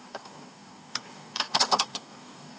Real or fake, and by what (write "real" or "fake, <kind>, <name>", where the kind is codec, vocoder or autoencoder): fake, codec, DAC